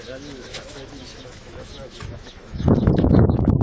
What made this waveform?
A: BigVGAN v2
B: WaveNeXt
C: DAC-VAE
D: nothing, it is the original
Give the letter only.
C